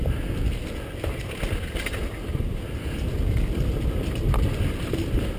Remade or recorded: recorded